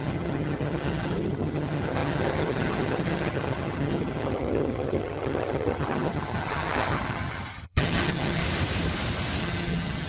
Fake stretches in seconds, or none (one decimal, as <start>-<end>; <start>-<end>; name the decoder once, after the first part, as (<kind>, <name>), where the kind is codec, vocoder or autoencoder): 0.0-8.4 (vocoder, HiFi-GAN); 9.4-10.1